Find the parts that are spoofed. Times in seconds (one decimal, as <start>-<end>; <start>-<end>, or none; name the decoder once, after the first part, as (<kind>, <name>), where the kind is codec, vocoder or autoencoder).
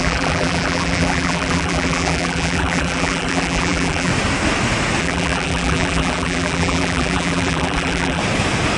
0.0-4.1 (vocoder, BigVGAN v2); 5.0-8.2